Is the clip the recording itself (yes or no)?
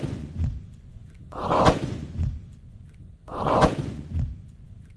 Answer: no